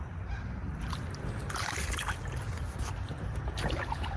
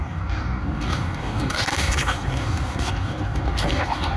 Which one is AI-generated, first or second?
second